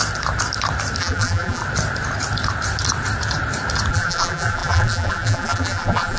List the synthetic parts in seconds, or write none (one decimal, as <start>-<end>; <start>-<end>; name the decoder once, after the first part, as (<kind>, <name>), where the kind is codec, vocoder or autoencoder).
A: 1.0-1.6 (vocoder, BigVGAN v2); 3.9-6.2